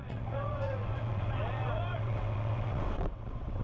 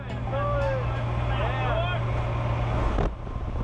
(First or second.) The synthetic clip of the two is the first